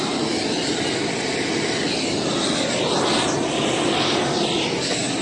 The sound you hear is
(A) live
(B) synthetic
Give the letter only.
A